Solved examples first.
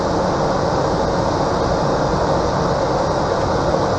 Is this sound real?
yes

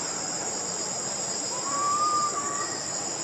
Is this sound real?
yes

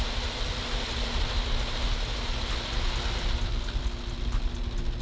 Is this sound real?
yes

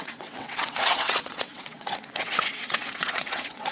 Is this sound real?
no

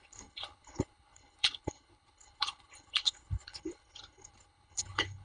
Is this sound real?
no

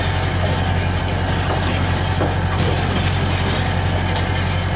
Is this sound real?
yes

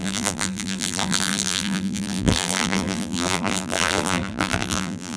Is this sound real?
no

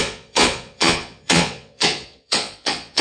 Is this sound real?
no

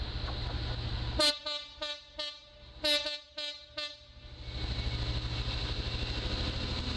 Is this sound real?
yes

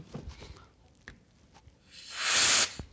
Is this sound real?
yes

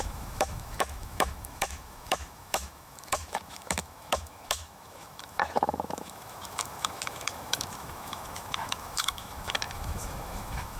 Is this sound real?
no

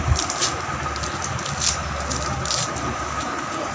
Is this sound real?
yes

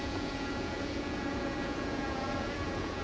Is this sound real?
no